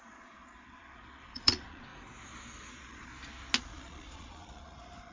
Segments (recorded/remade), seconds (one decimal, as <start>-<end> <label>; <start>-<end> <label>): 0.0-1.9 remade; 1.9-2.7 recorded; 2.7-3.1 remade; 3.1-3.6 recorded; 3.6-5.1 remade